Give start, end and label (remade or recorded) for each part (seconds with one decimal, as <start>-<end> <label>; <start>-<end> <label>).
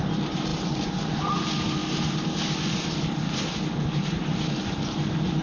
0.0-5.4 recorded